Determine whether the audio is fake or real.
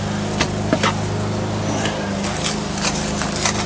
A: real